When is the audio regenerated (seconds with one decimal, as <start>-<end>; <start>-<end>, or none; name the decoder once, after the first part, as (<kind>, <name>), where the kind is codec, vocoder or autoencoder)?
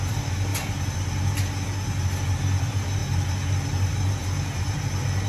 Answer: 0.0-0.5 (vocoder, BigVGAN v2); 2.6-3.0; 3.9-5.3